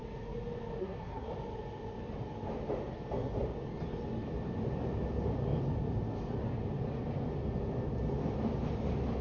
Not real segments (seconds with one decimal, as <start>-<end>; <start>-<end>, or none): 0.8-1.3